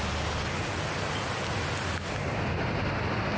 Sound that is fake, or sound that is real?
real